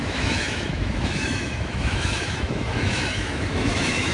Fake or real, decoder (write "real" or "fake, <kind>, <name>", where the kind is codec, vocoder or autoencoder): fake, autoencoder, DAC-VAE